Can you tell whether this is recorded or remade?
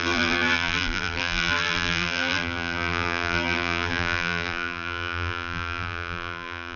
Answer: remade